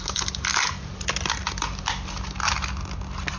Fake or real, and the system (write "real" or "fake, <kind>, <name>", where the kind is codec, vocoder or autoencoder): real